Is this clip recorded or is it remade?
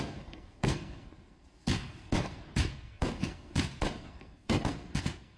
remade